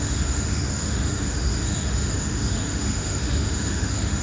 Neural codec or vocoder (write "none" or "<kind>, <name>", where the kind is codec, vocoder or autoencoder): autoencoder, DAC-VAE